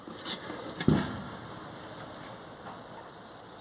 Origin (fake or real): real